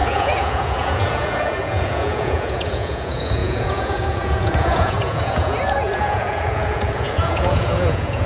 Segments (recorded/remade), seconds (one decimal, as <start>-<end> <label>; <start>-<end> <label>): 0.0-8.3 remade